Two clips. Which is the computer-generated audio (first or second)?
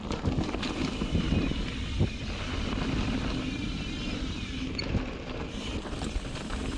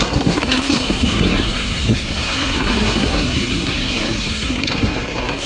second